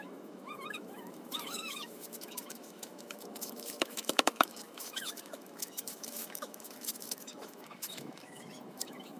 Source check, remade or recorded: remade